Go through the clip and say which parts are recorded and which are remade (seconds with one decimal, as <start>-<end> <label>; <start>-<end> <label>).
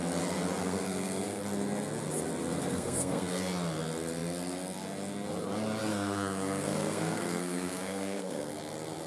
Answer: 0.0-0.6 recorded; 0.6-1.4 remade; 1.4-2.7 recorded; 2.7-3.4 remade; 3.4-5.9 recorded; 5.9-8.5 remade; 8.5-9.1 recorded